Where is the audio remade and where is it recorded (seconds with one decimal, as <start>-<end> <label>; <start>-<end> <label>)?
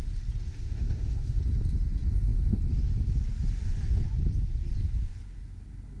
0.0-0.5 recorded; 0.5-1.4 remade; 1.4-6.0 recorded